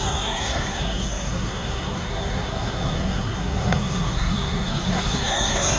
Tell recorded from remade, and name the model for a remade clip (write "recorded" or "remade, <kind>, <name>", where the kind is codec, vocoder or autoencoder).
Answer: remade, codec, SNAC